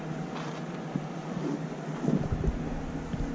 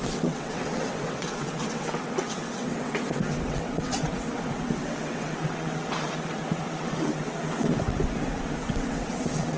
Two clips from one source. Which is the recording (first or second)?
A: first